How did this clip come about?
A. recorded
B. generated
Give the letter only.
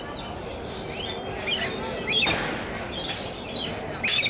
A